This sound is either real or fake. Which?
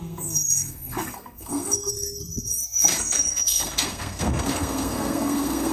fake